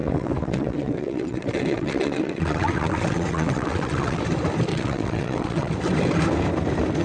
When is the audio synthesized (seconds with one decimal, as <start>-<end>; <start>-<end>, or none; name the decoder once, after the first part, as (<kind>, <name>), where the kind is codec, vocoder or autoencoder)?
0.0-4.2 (vocoder, WaveNeXt); 4.7-5.7